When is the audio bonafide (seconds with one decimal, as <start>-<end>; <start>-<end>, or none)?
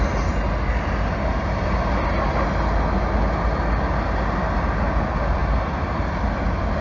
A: 0.0-6.8